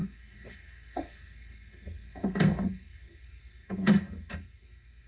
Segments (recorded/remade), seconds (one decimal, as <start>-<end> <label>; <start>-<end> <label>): 0.0-5.1 remade